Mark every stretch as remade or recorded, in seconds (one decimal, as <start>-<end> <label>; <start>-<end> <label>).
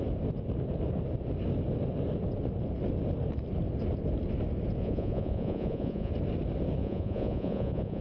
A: 0.0-4.8 recorded; 4.8-6.1 remade; 6.1-6.8 recorded; 6.8-8.0 remade